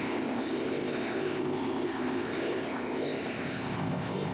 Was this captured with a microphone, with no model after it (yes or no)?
no